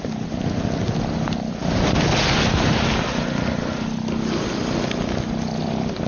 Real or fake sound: real